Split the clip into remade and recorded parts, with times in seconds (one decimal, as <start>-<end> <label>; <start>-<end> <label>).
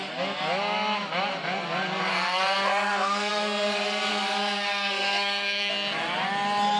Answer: 0.0-2.1 recorded; 2.1-3.3 remade; 3.3-4.1 recorded; 4.1-5.7 remade; 5.7-6.8 recorded